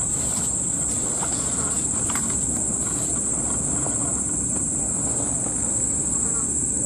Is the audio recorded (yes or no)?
yes